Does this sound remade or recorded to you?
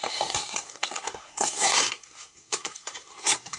remade